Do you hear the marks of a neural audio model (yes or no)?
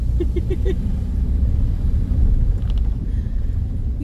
no